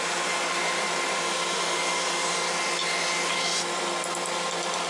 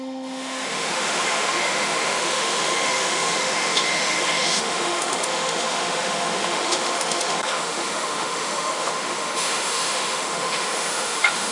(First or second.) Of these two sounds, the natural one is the first